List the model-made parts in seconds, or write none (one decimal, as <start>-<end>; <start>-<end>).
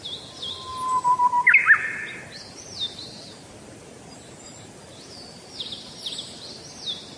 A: none